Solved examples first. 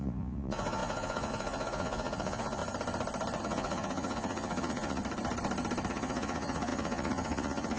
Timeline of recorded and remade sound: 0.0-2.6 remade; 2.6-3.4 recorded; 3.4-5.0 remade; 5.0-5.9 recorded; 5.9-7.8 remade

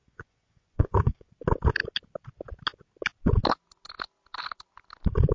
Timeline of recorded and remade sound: 0.0-1.3 remade; 1.3-5.3 recorded

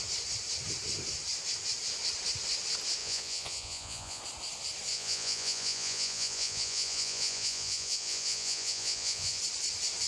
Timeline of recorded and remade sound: 0.0-3.0 recorded; 3.0-4.2 remade; 4.2-4.9 recorded; 4.9-9.4 remade; 9.4-10.1 recorded